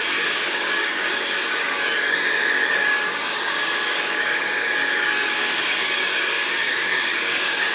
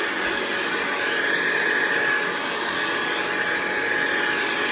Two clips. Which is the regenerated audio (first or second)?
first